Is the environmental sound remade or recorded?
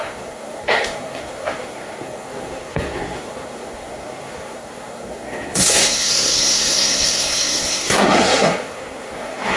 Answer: remade